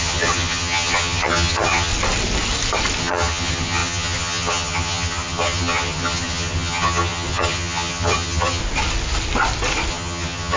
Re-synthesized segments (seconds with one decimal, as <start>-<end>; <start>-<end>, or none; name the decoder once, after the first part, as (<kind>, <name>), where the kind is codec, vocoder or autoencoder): 0.0-1.9 (vocoder, HiFi-GAN); 3.0-8.6; 9.9-10.6